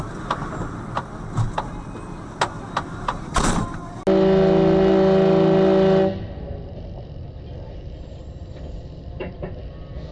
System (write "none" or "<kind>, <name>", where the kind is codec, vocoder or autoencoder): none